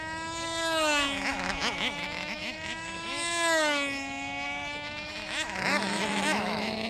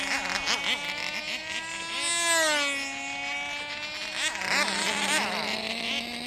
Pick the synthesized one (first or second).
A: first